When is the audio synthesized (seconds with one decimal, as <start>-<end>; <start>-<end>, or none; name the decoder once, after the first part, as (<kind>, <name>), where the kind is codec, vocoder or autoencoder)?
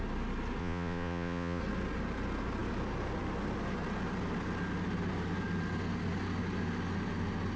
0.6-1.6 (vocoder, Vocos)